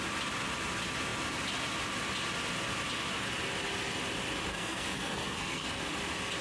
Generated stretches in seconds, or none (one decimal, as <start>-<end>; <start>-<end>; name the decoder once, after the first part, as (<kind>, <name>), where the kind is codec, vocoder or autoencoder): 4.5-5.8 (codec, SNAC)